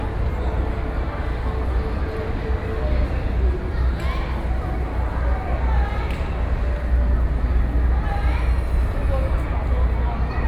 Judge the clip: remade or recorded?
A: recorded